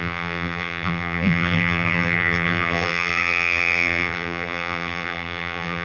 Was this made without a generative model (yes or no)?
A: no